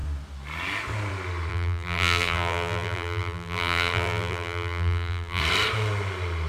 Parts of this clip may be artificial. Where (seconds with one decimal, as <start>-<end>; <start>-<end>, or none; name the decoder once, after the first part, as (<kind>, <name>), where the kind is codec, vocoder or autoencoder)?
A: 1.5-5.4 (vocoder, BigVGAN v2)

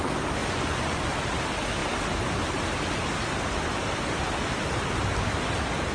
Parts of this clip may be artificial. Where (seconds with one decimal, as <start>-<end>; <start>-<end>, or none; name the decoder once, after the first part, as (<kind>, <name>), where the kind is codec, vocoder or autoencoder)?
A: 0.4-1.1 (vocoder, Vocos)

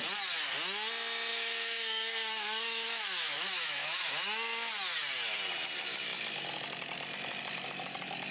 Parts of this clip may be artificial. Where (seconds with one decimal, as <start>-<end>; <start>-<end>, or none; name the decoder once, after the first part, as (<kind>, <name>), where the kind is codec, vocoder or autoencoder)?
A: 1.3-4.1 (autoencoder, DAC-VAE)

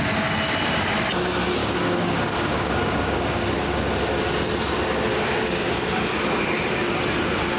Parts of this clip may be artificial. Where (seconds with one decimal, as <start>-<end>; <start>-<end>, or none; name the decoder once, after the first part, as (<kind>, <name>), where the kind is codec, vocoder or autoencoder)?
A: 1.6-3.5 (codec, DAC); 5.1-5.7

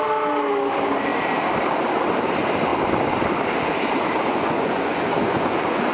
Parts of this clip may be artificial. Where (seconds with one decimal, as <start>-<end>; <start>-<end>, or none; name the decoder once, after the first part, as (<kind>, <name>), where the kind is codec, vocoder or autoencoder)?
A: 4.3-5.9 (vocoder, Vocos)

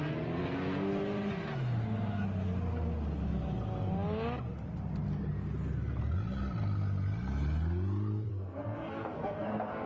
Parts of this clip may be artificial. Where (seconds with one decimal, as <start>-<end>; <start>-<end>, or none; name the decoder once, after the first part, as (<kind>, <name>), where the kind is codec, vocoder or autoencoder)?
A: 0.4-0.9 (codec, SNAC); 8.3-9.9